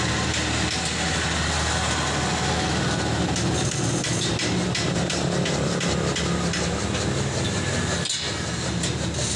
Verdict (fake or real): real